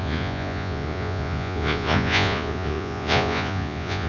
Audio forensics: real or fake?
fake